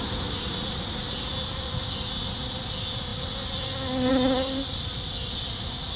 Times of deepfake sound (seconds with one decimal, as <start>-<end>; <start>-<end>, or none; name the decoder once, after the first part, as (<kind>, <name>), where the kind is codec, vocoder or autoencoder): none